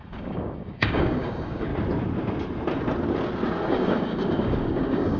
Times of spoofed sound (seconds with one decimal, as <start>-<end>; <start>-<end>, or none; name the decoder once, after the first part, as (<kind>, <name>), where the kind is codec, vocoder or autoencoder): 0.0-1.7 (codec, DAC); 3.7-5.2